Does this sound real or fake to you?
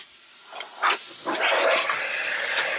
real